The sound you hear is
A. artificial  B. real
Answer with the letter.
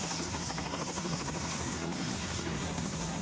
A